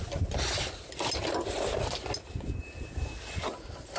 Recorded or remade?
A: recorded